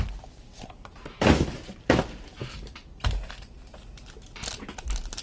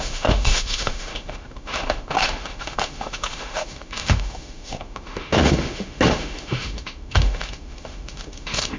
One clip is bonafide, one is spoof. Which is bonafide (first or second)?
first